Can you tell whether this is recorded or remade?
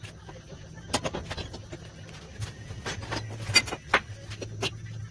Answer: recorded